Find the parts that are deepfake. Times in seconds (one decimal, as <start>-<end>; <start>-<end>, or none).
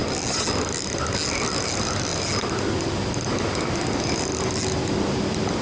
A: none